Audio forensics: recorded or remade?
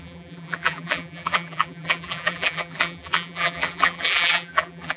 remade